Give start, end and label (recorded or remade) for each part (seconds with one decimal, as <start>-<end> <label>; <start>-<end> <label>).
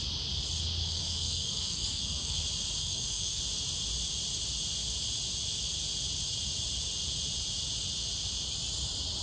0.0-0.8 recorded; 0.8-2.4 remade; 2.4-2.8 recorded; 2.8-3.4 remade; 3.4-9.2 recorded